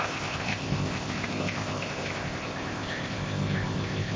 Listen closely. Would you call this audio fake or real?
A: fake